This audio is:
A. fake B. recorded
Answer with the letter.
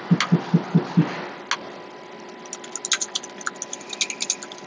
B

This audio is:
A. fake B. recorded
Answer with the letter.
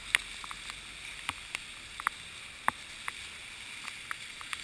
B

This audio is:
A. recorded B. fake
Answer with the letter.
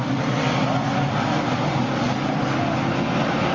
A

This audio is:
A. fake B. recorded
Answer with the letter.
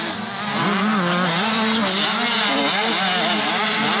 B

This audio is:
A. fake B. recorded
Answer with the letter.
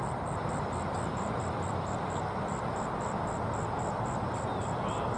B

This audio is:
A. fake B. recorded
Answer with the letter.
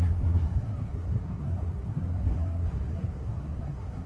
A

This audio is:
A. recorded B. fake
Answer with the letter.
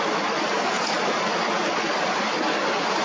A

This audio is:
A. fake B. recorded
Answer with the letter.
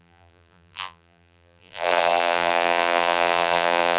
A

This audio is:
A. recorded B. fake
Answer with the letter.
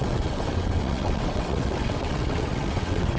B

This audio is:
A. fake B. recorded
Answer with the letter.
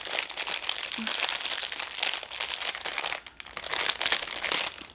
B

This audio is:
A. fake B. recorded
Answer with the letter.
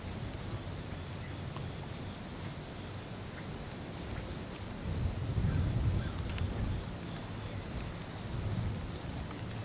B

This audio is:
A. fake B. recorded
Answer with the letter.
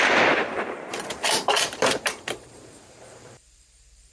A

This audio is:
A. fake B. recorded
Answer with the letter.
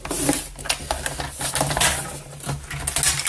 B